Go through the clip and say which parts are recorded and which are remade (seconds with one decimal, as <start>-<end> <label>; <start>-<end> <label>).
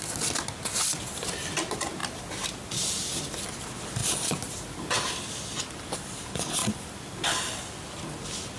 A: 0.0-2.0 recorded; 2.0-3.4 remade; 3.4-4.0 recorded; 4.0-5.2 remade; 5.2-6.6 recorded; 6.6-7.7 remade; 7.7-8.6 recorded